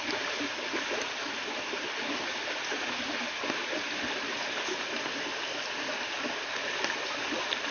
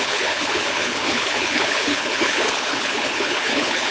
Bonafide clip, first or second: first